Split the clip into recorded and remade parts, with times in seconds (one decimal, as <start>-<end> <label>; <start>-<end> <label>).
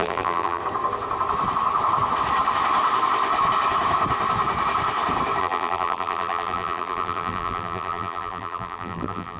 0.0-0.6 remade; 0.6-5.4 recorded; 5.4-9.4 remade